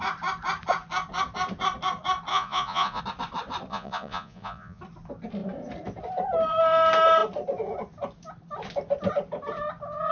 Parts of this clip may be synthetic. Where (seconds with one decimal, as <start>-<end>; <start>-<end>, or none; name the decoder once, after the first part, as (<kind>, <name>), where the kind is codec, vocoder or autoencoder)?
2.3-3.0 (vocoder, Vocos); 3.7-4.8